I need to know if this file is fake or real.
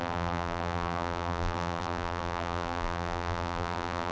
fake